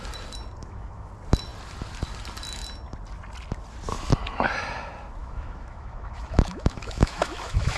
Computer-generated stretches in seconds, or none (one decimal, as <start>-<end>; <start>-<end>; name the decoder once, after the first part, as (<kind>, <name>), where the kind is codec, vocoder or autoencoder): 0.6-1.1 (autoencoder, DAC-VAE); 5.2-7.8